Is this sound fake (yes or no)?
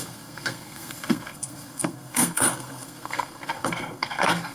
yes